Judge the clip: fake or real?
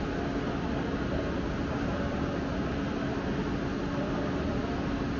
real